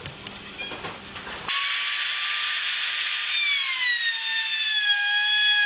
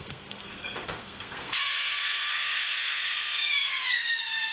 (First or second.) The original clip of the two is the first